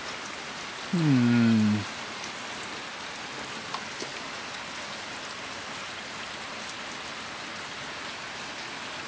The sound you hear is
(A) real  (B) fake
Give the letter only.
A